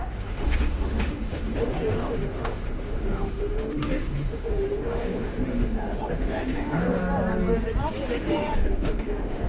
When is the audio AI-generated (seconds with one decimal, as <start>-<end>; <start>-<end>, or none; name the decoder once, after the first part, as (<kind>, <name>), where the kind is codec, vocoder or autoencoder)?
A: 0.0-7.0 (autoencoder, DAC-VAE); 8.1-9.5